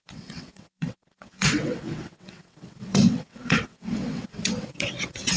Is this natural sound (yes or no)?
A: no